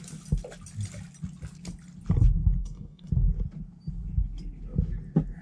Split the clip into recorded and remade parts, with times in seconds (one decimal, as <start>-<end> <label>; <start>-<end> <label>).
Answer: 0.0-2.6 recorded; 2.6-3.1 remade; 3.1-5.4 recorded